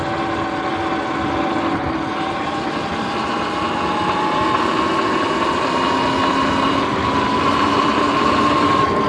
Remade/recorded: recorded